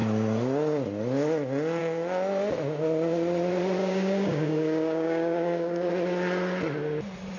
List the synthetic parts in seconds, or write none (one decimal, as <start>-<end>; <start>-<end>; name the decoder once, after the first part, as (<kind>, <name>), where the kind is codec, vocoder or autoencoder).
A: 3.8-5.9 (codec, DAC)